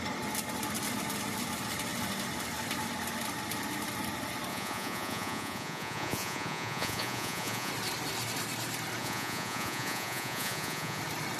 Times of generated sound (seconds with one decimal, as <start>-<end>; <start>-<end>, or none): 4.5-7.7; 9.0-11.0